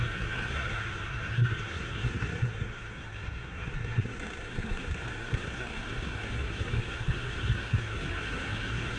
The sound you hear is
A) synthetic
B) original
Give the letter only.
A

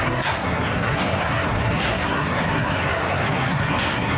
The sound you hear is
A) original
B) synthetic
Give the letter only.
B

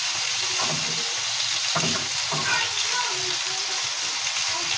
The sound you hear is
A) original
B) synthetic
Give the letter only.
A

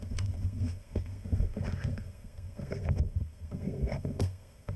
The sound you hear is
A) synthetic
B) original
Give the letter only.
A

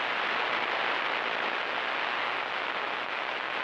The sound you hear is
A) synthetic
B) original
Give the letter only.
B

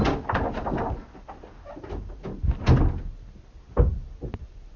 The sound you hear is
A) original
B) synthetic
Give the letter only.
A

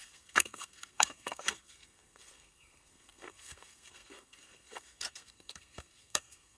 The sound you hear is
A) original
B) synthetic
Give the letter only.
B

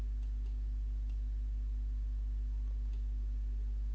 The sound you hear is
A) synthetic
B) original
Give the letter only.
B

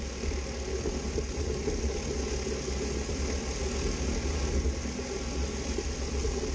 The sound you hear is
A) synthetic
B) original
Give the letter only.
B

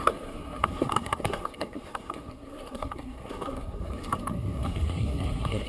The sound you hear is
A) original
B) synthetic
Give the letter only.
B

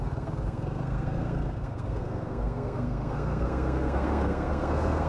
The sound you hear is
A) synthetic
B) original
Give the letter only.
A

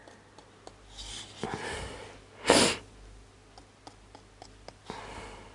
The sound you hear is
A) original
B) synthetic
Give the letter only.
A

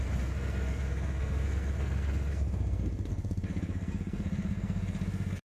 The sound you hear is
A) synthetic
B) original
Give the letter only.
A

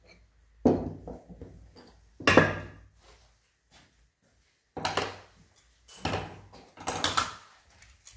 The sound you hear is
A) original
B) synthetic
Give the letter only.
A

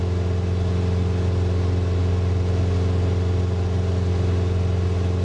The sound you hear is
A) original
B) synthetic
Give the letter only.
A